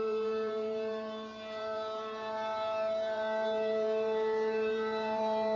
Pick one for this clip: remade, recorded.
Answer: remade